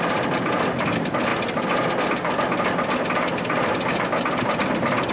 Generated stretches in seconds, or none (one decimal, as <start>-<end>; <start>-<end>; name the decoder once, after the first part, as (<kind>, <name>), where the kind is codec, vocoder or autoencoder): none